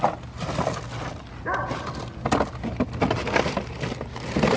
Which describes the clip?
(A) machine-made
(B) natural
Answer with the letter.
B